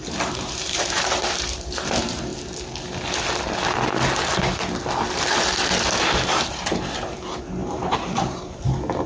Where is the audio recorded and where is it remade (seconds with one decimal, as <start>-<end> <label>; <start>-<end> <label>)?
0.0-2.3 remade; 2.3-6.0 recorded; 6.0-9.1 remade